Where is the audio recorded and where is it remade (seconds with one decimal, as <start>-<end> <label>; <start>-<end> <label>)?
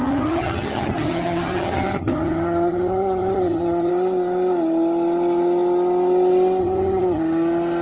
0.0-3.9 remade; 3.9-6.6 recorded; 6.6-7.2 remade; 7.2-7.8 recorded